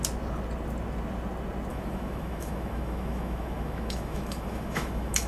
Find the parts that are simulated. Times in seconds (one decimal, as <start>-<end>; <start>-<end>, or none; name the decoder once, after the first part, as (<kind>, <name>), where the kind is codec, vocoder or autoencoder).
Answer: 1.7-5.3 (autoencoder, DAC-VAE)